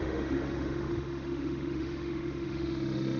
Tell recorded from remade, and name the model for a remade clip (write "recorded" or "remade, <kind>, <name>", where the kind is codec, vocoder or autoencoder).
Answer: remade, autoencoder, DAC-VAE